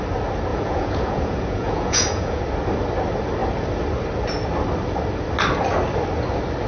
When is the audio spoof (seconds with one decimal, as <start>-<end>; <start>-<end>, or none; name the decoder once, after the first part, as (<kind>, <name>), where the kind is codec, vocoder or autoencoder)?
0.5-2.4 (vocoder, Vocos)